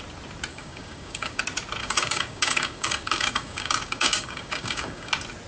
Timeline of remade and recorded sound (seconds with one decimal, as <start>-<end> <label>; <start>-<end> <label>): 0.0-0.5 recorded; 0.5-1.4 remade; 1.4-1.8 recorded; 1.8-5.1 remade; 5.1-5.5 recorded